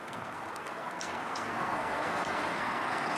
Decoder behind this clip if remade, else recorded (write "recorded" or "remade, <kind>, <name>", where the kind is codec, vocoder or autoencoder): remade, codec, SNAC